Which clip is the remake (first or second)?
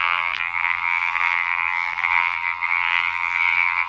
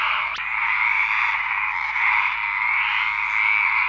first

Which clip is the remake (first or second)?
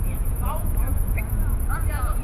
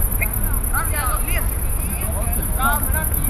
first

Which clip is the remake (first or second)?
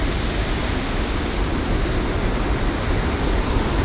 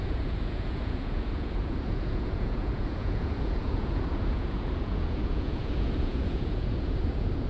second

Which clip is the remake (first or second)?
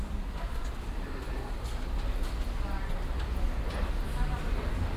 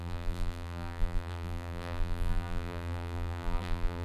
second